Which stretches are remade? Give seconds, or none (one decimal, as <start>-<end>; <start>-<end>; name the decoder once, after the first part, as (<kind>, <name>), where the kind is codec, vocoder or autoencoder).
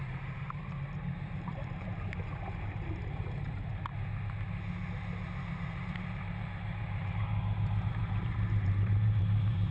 0.0-3.7 (vocoder, BigVGAN v2); 5.5-7.3; 7.9-9.7